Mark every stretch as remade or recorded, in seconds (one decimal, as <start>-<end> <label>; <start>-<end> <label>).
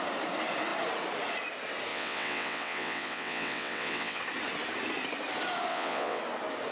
0.0-1.9 recorded; 1.9-4.2 remade; 4.2-5.7 recorded; 5.7-6.2 remade; 6.2-6.7 recorded